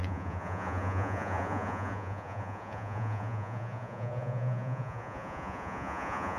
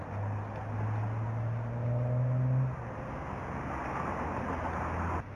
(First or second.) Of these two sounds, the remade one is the first